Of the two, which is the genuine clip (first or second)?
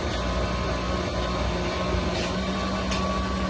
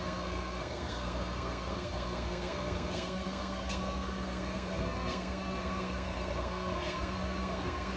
first